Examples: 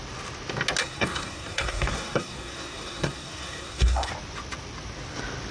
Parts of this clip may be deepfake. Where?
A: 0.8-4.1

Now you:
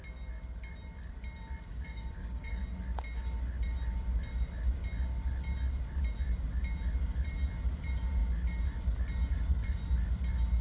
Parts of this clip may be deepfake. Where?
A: 1.7-2.6

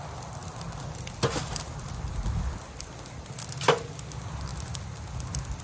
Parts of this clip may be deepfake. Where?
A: none

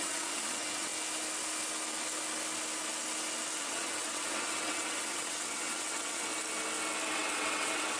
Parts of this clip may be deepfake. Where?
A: 0.0-0.9; 3.6-6.3; 7.1-8.0